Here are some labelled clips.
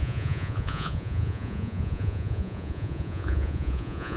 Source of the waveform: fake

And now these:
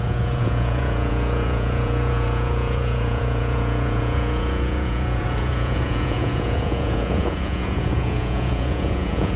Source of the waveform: fake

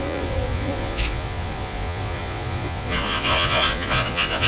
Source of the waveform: fake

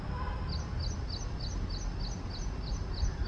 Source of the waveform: real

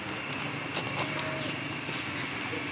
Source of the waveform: real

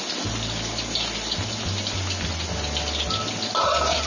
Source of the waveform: real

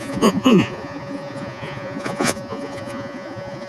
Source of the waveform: fake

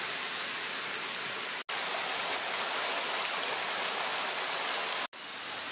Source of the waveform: real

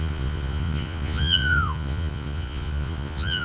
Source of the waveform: fake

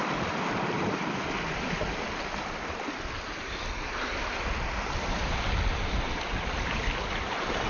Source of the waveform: real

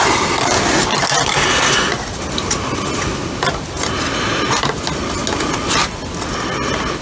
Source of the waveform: real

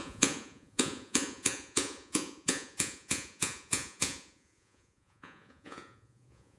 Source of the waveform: fake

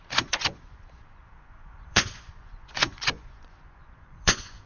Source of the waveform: fake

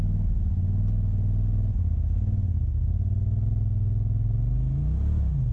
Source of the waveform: real